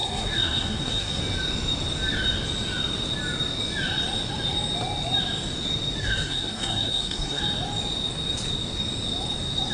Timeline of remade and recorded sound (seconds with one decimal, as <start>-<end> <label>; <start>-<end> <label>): 0.0-1.2 remade; 1.2-6.0 recorded; 6.0-7.4 remade; 7.4-9.7 recorded